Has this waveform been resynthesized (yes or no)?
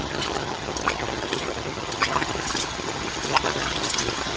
yes